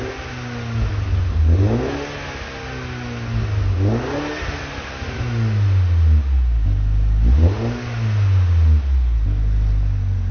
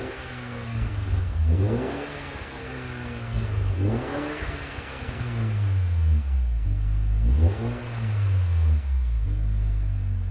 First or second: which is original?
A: first